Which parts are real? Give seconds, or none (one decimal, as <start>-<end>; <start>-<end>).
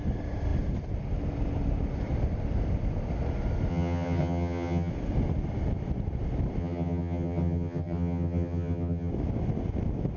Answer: 0.0-3.7; 4.9-6.6; 9.1-10.2